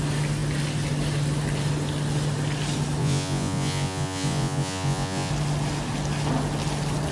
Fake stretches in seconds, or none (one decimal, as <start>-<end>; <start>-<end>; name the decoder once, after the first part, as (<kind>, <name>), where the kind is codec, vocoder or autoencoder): 3.0-5.3 (vocoder, Vocos)